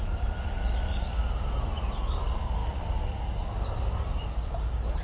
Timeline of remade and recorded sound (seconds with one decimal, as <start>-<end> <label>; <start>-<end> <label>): 0.0-5.0 recorded